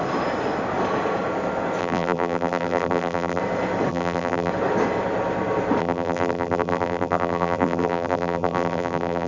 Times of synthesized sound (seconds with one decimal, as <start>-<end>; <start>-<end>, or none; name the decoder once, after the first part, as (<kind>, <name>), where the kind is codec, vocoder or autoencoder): 1.8-3.4 (vocoder, BigVGAN v2); 3.9-4.5; 5.8-9.3